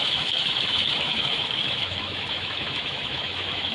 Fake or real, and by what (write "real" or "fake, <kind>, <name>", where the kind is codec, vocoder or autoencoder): fake, autoencoder, DAC-VAE